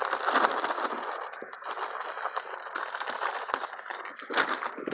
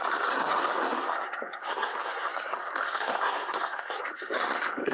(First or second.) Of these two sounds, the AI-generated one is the second